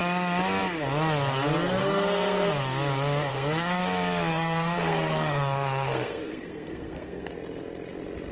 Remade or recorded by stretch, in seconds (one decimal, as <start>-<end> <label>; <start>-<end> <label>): 0.0-1.8 recorded; 1.8-2.5 remade; 2.5-3.3 recorded; 3.3-3.8 remade; 3.8-4.3 recorded; 4.3-7.3 remade; 7.3-8.3 recorded